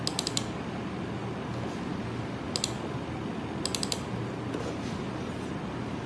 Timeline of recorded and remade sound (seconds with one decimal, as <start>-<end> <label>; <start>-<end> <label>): 0.0-6.1 recorded